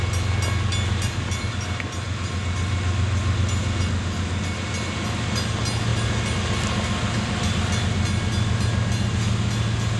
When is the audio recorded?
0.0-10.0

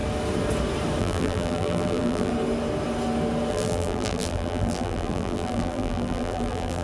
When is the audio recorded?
0.0-1.0; 2.3-3.5

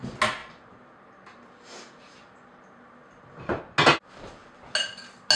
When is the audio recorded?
0.0-0.4; 3.6-5.4

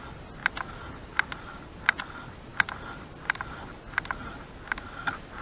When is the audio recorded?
0.0-0.4; 1.6-5.4

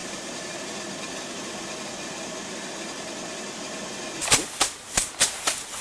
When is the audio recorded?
0.7-4.2; 5.1-5.8

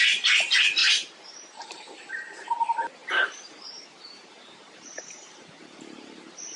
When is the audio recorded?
0.0-0.8; 2.1-3.0

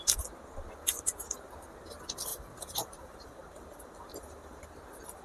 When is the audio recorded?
0.0-2.3; 4.8-5.2

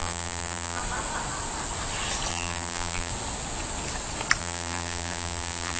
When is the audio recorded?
0.8-2.3; 3.1-4.4